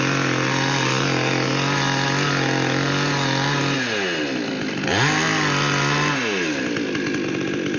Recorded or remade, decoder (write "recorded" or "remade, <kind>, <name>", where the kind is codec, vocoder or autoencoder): recorded